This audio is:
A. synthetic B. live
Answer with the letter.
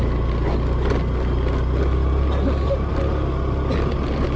B